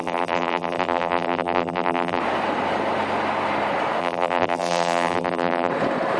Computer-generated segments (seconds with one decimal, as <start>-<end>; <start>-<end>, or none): 0.0-2.2; 4.0-5.7